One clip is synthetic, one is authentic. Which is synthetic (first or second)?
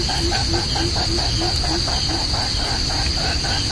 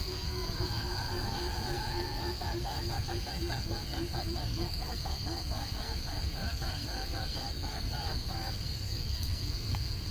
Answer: second